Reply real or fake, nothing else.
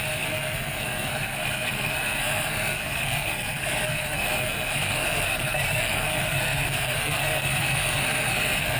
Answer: fake